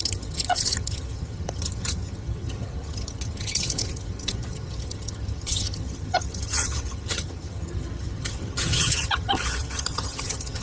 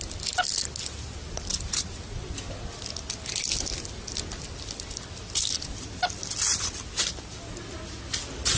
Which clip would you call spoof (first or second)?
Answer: first